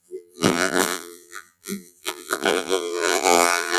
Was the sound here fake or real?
fake